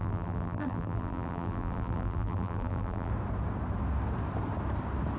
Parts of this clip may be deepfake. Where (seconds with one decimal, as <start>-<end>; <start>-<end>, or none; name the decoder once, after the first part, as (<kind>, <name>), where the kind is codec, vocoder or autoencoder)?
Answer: 0.0-3.1 (vocoder, BigVGAN v2)